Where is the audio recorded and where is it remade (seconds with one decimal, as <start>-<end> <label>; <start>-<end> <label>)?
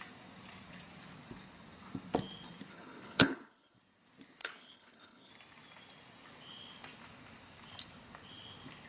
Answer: 0.0-2.7 recorded; 2.7-3.8 remade; 3.8-4.4 recorded; 4.4-5.3 remade; 5.3-8.9 recorded